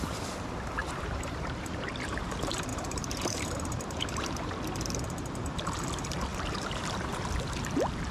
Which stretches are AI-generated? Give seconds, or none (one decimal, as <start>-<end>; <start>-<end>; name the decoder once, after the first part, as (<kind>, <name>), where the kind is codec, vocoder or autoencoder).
0.8-2.3 (vocoder, BigVGAN v2); 2.7-4.5; 6.3-7.2